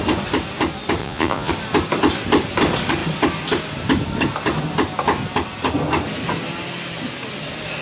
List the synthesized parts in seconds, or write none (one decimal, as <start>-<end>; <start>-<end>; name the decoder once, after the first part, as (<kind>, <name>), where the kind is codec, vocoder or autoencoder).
1.0-1.5 (vocoder, Vocos)